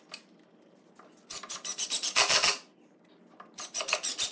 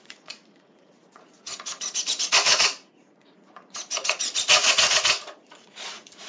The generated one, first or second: second